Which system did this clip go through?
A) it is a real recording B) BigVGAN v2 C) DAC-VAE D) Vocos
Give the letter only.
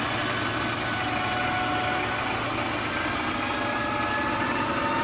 A